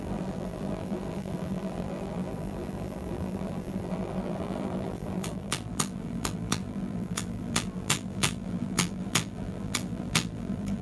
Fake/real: fake